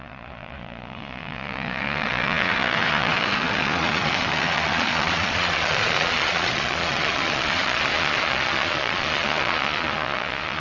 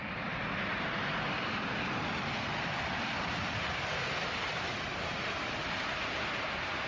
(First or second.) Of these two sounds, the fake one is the first